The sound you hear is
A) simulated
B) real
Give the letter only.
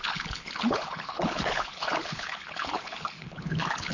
A